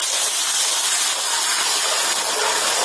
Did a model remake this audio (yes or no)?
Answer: no